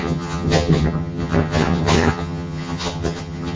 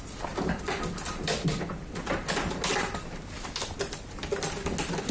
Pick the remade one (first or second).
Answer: first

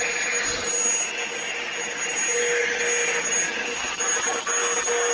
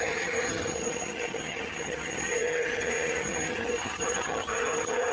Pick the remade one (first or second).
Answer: second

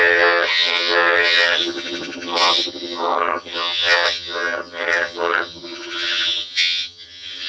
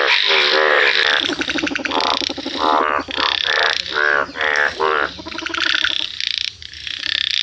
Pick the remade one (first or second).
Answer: first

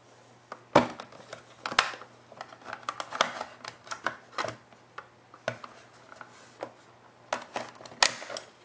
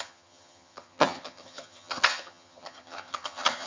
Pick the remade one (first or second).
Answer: second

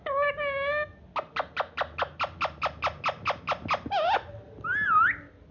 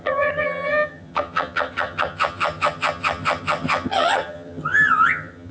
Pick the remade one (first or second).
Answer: second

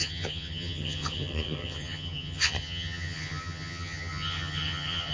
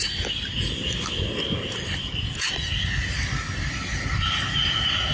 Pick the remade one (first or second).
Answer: first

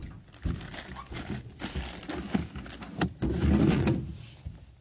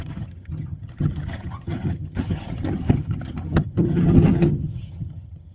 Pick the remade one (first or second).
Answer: second